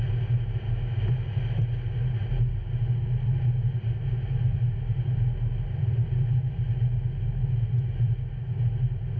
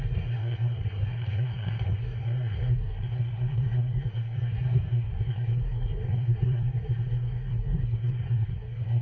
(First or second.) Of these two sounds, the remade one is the second